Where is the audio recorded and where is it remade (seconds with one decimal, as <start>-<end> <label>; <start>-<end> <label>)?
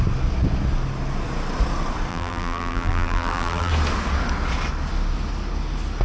0.0-2.1 recorded; 2.1-3.7 remade; 3.7-6.0 recorded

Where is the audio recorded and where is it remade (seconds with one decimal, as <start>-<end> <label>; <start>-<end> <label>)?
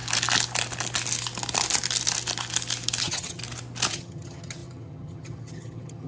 0.0-3.0 recorded; 3.0-3.4 remade; 3.4-3.9 recorded; 3.9-6.1 remade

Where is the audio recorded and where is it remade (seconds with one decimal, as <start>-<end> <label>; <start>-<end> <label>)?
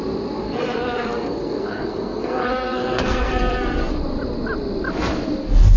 0.0-0.4 recorded; 0.4-3.9 remade; 3.9-5.8 recorded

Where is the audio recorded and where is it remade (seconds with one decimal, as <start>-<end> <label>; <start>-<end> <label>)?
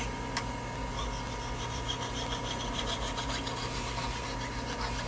0.0-5.1 recorded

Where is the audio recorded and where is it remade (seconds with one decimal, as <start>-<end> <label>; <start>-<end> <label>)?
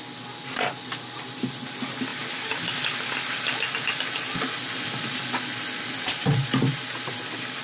0.0-7.6 recorded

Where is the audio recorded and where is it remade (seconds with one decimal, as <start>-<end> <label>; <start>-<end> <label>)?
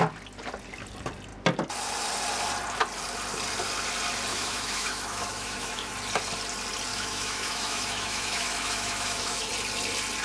0.0-4.3 recorded; 4.3-5.9 remade; 5.9-6.9 recorded; 6.9-9.5 remade; 9.5-10.2 recorded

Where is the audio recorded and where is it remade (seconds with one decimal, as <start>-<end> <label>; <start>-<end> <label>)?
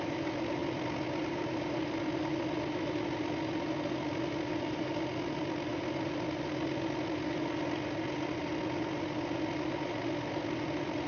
0.0-11.1 recorded